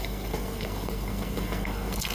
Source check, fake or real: fake